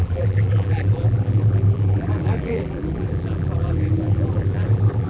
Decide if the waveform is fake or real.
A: fake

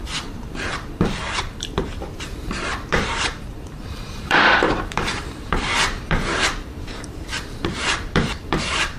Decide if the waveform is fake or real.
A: fake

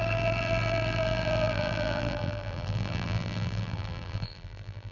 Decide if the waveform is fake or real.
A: fake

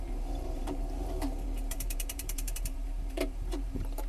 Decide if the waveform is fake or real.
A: fake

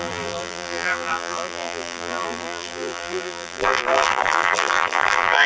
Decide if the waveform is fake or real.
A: fake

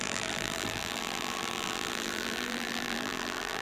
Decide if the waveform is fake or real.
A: fake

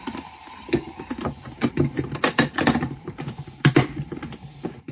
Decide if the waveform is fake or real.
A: fake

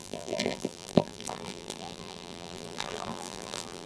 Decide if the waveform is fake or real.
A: fake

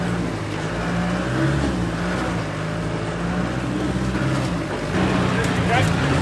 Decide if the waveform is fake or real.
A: real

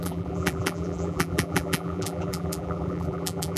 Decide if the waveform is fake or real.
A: fake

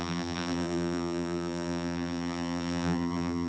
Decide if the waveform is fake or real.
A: fake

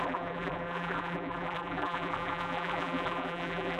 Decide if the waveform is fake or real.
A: fake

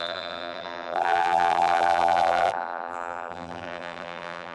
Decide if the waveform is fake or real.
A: fake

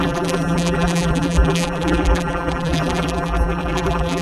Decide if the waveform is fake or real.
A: fake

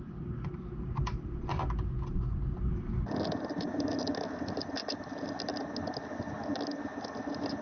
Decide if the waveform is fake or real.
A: real